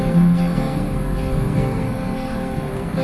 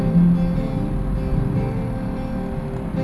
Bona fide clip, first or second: second